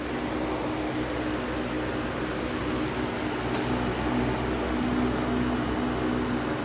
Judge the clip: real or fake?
real